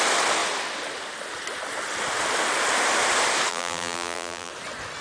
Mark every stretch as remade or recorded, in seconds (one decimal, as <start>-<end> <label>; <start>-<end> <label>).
0.0-3.5 recorded; 3.5-4.5 remade; 4.5-5.0 recorded